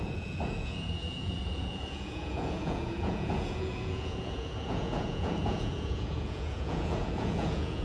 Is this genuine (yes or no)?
no